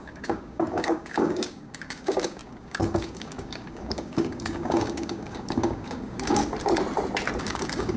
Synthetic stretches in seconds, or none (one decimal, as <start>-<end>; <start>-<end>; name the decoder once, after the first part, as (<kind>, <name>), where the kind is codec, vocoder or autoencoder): 0.0-6.4 (codec, DAC); 7.4-8.0